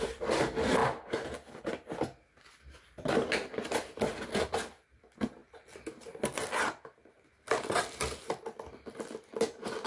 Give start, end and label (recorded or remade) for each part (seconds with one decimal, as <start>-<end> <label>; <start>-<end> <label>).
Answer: 0.0-9.9 recorded